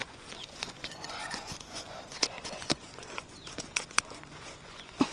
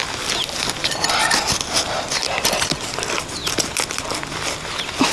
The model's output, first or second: first